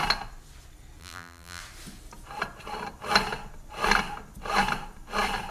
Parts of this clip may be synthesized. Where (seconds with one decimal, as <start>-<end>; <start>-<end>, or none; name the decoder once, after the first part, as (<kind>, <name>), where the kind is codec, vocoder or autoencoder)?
1.0-1.6 (vocoder, BigVGAN v2)